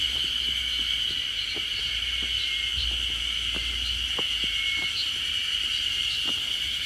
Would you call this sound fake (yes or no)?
no